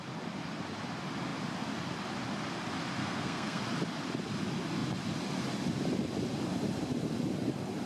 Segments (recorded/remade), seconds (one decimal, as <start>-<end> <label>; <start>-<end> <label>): 0.0-3.0 recorded; 3.0-3.6 remade; 3.6-7.9 recorded